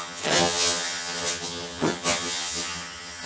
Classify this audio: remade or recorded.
remade